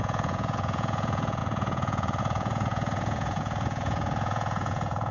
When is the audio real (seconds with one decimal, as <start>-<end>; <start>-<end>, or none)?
none